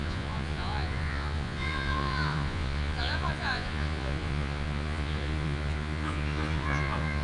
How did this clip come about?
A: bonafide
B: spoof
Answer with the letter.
B